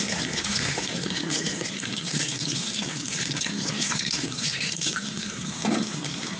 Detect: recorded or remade remade